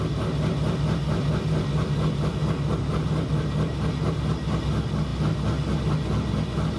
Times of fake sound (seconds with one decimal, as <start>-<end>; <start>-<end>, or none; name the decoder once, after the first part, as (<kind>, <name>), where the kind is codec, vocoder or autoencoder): none